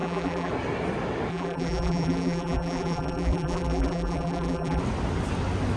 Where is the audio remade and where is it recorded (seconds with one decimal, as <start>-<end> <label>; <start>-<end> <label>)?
0.0-0.5 remade; 0.5-1.3 recorded; 1.3-4.8 remade; 4.8-5.8 recorded